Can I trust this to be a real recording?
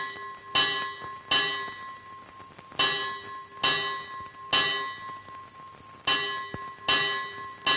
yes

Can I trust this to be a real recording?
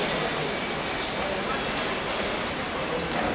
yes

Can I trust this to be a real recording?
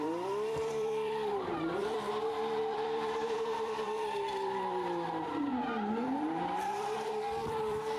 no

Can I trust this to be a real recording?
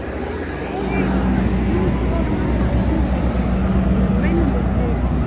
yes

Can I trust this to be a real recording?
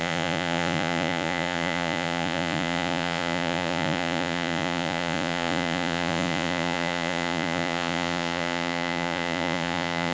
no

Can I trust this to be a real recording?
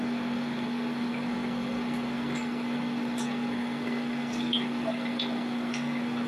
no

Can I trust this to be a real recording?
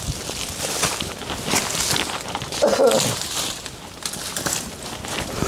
yes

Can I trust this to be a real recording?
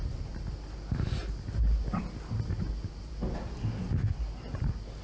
yes